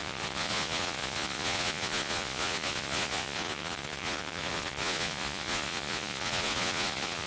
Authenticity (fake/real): fake